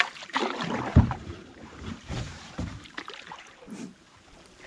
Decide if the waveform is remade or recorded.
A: remade